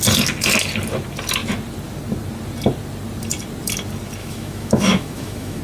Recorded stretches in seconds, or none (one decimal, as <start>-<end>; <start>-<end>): 0.0-4.2